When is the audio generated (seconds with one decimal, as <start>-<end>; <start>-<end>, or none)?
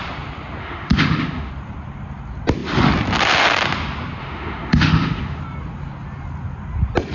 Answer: 0.6-1.5; 4.2-5.4